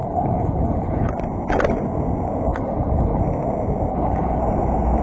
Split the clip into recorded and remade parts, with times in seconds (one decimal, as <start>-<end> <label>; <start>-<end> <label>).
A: 0.0-1.1 remade; 1.1-2.5 recorded; 2.5-3.2 remade; 3.2-3.9 recorded; 3.9-4.4 remade; 4.4-5.0 recorded